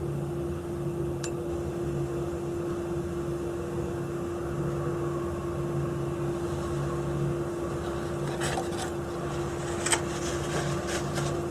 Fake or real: real